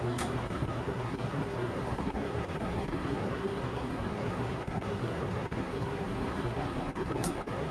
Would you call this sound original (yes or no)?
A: no